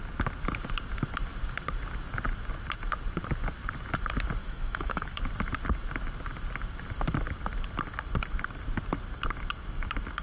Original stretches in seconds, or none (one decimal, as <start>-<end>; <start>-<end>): 0.0-4.4; 5.2-10.2